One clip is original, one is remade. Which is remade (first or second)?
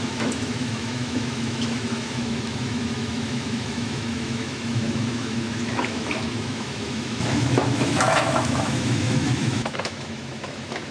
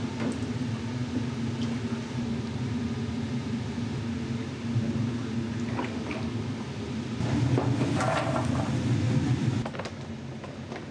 first